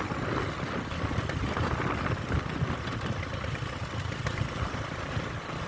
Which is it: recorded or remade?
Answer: recorded